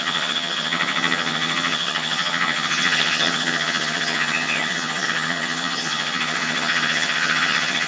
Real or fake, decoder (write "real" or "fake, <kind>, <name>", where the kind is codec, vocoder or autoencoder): fake, vocoder, HiFi-GAN